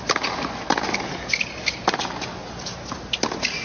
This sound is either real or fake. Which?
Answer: real